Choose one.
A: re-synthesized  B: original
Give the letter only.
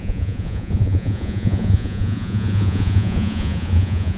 A